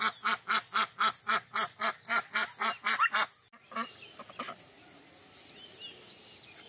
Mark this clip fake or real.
real